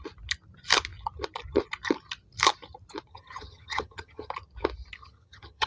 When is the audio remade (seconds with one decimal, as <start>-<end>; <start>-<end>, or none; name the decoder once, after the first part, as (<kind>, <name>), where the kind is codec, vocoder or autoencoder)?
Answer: 3.1-4.3 (vocoder, HiFi-GAN); 5.0-5.7